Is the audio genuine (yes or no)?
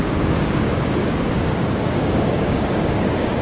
no